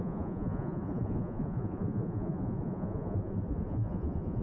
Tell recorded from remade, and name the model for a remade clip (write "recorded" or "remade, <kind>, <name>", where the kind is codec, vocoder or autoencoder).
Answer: remade, vocoder, Vocos